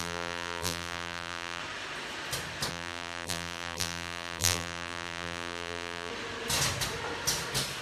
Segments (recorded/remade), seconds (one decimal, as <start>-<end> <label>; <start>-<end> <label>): 0.0-1.6 remade; 1.6-2.7 recorded; 2.7-6.1 remade; 6.1-7.8 recorded